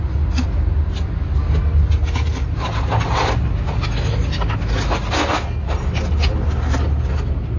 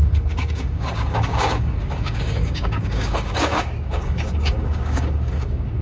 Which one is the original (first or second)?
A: first